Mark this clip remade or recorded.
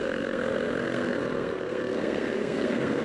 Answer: remade